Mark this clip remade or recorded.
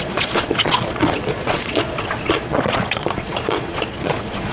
remade